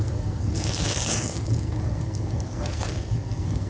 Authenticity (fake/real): fake